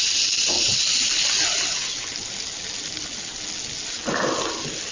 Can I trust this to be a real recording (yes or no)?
yes